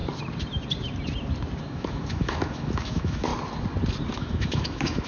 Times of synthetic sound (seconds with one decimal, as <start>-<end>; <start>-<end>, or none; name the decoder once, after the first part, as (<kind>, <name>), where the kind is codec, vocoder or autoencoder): 1.6-3.3 (autoencoder, DAC-VAE); 4.1-5.1